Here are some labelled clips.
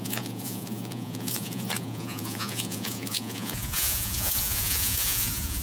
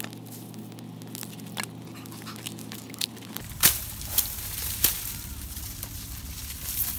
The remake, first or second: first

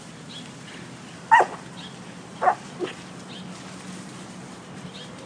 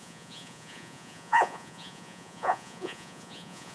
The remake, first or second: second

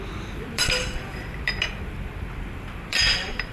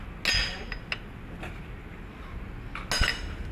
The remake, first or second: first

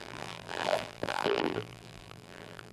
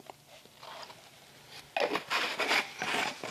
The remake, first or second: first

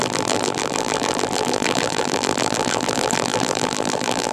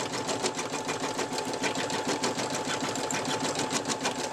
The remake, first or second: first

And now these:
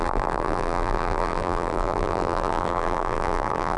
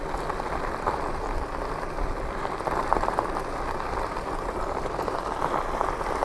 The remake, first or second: first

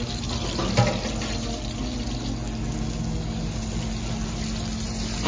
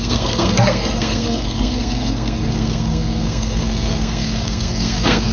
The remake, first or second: second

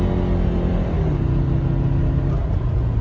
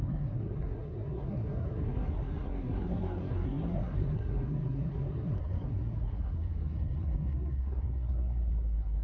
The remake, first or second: second